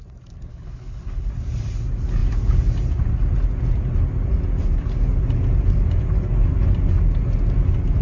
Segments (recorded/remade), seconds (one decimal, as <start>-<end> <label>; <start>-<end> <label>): 0.0-0.5 recorded; 0.5-1.3 remade; 1.3-8.0 recorded